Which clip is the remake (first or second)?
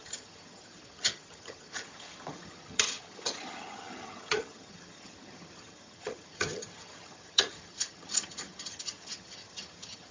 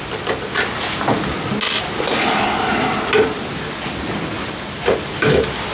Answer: first